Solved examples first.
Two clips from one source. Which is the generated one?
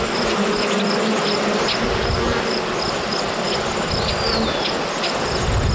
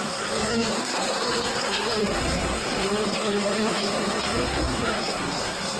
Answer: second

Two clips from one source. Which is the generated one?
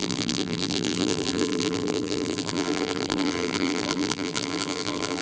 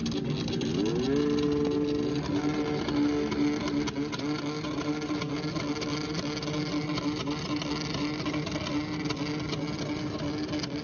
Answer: first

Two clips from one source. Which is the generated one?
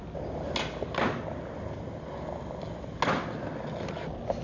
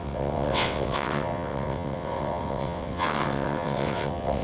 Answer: second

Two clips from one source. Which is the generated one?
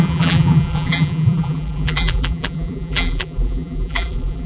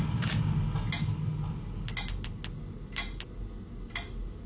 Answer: first